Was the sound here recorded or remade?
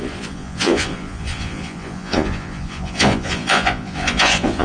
remade